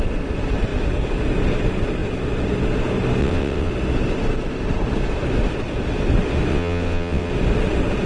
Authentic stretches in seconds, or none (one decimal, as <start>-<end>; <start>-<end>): 0.0-3.2; 3.7-6.5; 7.3-8.1